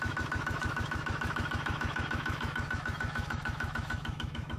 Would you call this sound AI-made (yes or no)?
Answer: yes